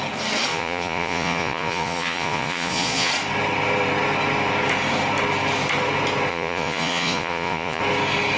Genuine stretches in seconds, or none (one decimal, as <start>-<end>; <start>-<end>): 0.0-0.5; 3.1-6.3; 7.8-8.4